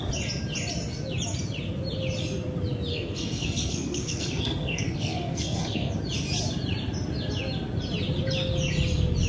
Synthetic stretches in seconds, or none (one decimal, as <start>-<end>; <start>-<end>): 2.9-5.9